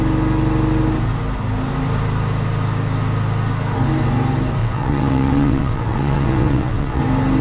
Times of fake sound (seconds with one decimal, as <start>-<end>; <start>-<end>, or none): 4.6-7.0